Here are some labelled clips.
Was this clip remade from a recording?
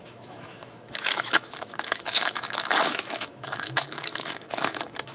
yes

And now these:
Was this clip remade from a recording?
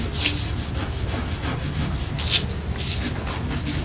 no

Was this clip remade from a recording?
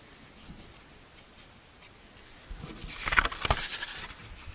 no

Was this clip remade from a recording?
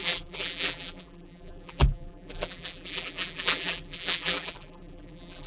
yes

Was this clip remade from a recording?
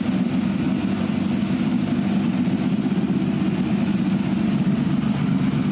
no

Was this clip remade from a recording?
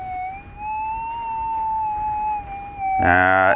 no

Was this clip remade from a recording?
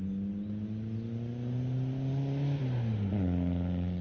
no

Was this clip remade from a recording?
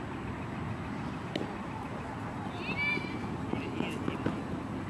no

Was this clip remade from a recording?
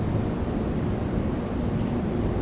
no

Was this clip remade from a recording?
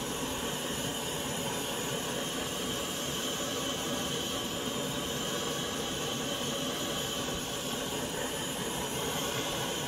yes